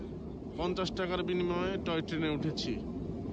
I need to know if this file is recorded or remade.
recorded